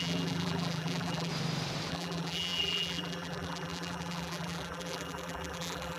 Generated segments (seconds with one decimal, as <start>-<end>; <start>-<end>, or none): 0.0-1.3; 1.9-6.0